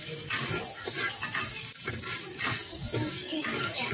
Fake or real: fake